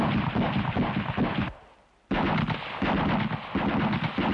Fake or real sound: real